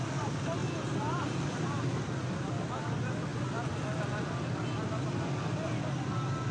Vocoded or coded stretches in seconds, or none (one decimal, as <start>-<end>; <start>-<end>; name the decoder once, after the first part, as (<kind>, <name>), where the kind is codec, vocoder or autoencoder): none